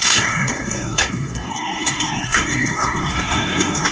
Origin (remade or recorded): remade